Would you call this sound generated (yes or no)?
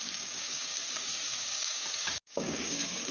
yes